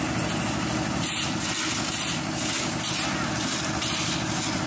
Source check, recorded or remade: recorded